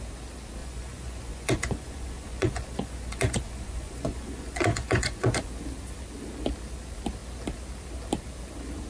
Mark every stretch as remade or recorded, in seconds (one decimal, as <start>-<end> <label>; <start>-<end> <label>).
0.0-0.6 recorded; 0.6-5.5 remade; 5.5-8.9 recorded